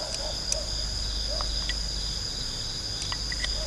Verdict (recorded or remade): recorded